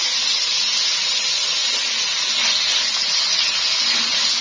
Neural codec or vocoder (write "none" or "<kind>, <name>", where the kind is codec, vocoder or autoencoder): none